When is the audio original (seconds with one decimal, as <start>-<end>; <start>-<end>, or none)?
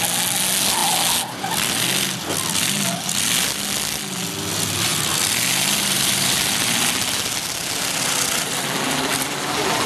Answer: 0.0-4.9; 8.0-9.9